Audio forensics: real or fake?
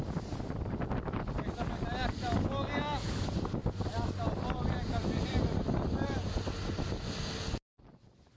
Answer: real